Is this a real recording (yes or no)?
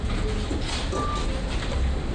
yes